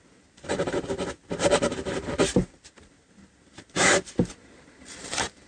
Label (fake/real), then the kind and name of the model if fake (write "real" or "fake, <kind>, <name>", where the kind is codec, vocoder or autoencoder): fake, vocoder, BigVGAN v2